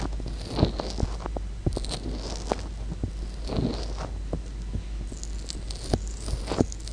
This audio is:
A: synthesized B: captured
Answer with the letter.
B